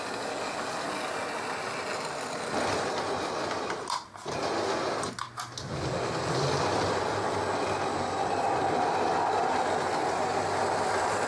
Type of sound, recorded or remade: recorded